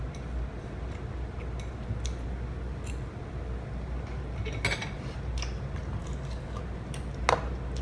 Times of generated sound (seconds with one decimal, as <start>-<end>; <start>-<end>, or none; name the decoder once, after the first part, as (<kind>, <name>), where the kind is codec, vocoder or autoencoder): 6.0-6.6 (codec, DAC)